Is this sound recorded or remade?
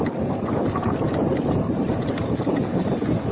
remade